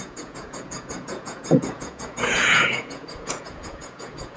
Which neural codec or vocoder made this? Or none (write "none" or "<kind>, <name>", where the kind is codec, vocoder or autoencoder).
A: vocoder, Vocos